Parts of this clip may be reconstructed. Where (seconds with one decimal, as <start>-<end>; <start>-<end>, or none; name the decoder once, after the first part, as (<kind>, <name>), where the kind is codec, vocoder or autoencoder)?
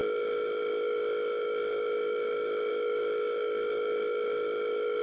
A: 0.0-5.0 (codec, DAC)